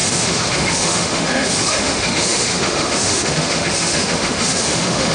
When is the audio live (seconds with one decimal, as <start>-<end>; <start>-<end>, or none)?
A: none